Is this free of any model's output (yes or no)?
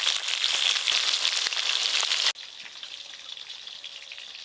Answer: yes